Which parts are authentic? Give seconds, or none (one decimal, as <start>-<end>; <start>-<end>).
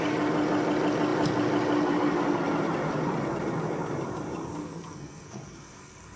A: 0.0-4.6